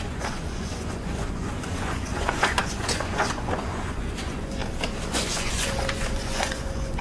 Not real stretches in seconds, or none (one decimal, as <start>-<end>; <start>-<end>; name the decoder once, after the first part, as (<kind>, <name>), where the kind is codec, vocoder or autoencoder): 0.0-4.6 (vocoder, Vocos); 5.1-7.0